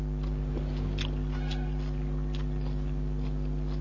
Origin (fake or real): real